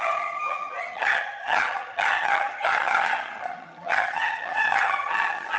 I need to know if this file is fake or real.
fake